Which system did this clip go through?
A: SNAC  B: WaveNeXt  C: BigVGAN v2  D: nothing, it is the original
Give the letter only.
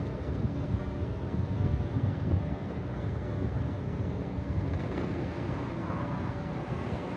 A